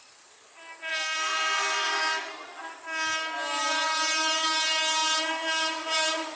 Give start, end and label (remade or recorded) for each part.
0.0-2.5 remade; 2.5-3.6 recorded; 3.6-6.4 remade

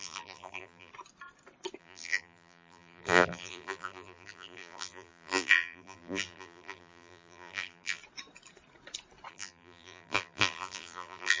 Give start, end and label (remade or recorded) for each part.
0.0-0.9 remade; 0.9-1.8 recorded; 1.8-8.0 remade; 8.0-9.3 recorded; 9.3-11.4 remade

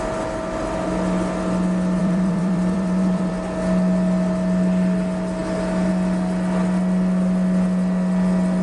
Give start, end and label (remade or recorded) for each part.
0.0-2.0 recorded; 2.0-3.3 remade; 3.3-8.6 recorded

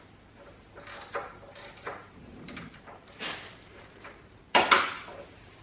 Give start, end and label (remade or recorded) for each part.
0.0-1.9 recorded; 1.9-5.6 remade